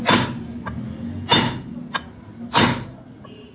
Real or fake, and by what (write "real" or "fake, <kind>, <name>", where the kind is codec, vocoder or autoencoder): real